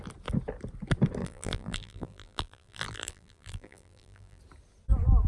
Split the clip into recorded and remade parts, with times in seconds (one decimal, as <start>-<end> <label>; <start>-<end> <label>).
0.0-1.2 recorded; 1.2-4.4 remade; 4.4-5.3 recorded